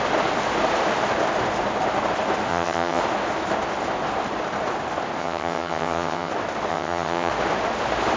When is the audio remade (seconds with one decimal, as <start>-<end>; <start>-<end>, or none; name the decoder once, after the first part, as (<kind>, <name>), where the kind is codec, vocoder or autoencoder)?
2.5-3.0 (vocoder, HiFi-GAN); 5.2-6.3; 6.7-7.3